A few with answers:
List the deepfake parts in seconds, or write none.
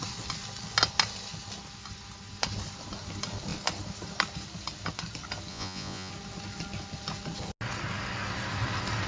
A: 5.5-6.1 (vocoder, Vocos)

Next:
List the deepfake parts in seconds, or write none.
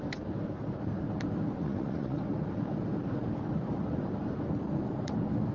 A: 1.6-2.2 (vocoder, Vocos)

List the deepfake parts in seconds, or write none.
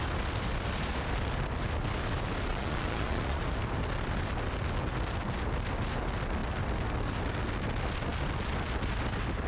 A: 2.5-3.4 (vocoder, Vocos)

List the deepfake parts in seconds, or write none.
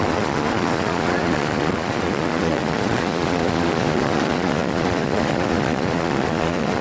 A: 0.0-6.8 (vocoder, Vocos)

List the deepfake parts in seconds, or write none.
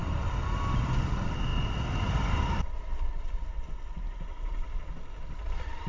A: none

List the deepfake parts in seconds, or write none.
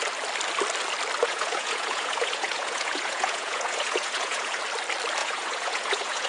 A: 1.2-4.6 (vocoder, Vocos); 5.2-6.3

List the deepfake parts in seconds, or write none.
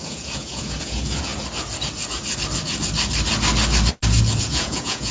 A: 0.0-1.3 (vocoder, Vocos); 4.4-5.1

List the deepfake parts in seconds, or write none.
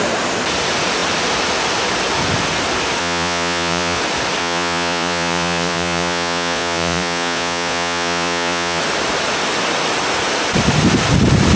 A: 3.0-4.0 (vocoder, Vocos); 4.4-8.8